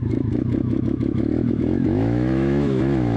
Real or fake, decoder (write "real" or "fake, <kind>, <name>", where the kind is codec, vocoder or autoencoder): fake, autoencoder, DAC-VAE